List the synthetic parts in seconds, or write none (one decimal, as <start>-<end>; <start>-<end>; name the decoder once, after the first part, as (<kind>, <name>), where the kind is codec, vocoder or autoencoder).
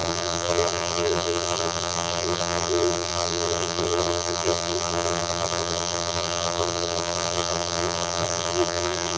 0.0-9.2 (vocoder, BigVGAN v2)